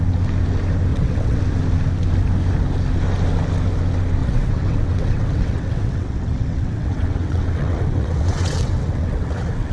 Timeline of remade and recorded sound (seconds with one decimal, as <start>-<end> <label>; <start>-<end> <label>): 0.0-0.9 recorded; 0.9-1.4 remade; 1.4-4.2 recorded; 4.2-9.7 remade